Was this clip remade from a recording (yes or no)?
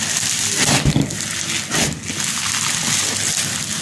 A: no